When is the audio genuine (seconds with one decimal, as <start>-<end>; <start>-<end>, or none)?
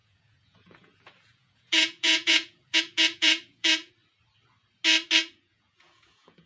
3.9-5.2